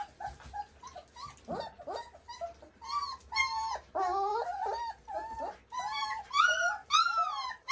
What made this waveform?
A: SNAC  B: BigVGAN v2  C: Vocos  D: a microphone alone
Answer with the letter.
D